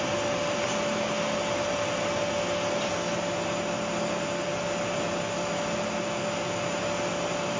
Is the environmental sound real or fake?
real